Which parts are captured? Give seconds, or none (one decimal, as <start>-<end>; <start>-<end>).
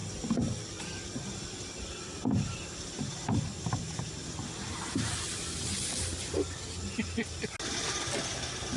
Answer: 0.0-8.8